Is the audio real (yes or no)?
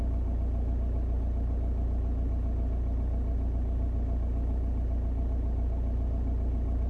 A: yes